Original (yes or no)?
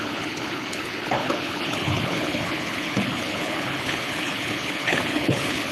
no